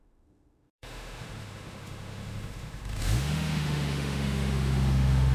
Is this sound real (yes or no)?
no